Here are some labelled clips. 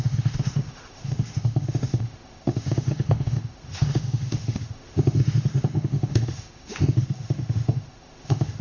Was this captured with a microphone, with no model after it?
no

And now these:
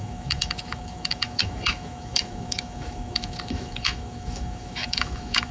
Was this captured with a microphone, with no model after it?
no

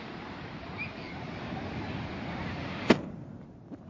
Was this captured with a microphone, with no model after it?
yes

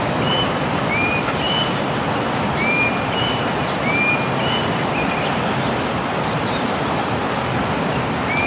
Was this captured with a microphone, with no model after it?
yes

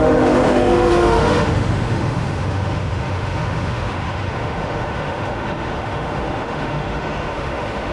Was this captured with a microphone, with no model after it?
no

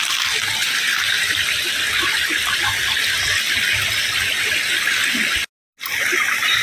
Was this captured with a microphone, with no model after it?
yes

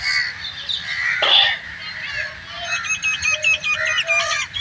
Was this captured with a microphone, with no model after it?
yes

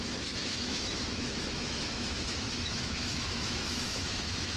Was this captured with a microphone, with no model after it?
no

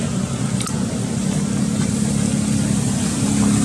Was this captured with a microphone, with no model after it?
yes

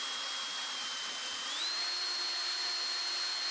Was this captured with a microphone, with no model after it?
yes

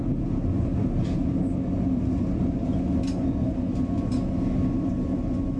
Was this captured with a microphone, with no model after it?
yes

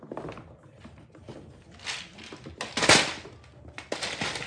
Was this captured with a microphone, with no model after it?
yes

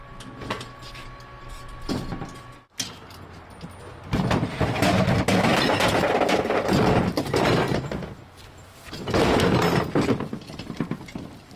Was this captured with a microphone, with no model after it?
yes